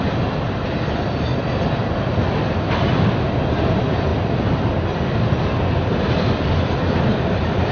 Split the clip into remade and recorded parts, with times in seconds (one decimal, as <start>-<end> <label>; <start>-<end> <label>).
0.0-7.7 recorded